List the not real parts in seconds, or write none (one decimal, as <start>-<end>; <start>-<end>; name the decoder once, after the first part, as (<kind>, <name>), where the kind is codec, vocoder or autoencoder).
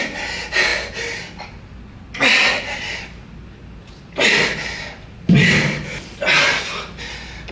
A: none